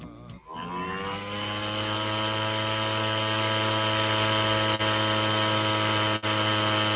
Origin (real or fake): real